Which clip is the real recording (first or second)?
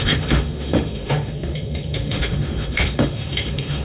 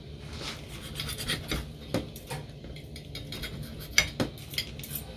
second